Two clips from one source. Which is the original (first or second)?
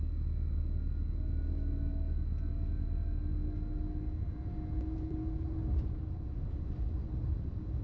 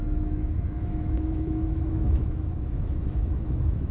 first